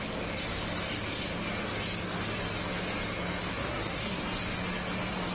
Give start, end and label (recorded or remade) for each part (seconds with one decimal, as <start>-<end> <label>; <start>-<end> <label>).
0.0-3.5 recorded; 3.5-4.2 remade; 4.2-5.3 recorded